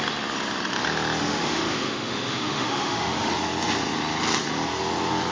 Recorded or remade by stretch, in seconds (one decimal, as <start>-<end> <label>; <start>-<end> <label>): 0.0-1.2 recorded; 1.2-3.3 remade; 3.3-5.3 recorded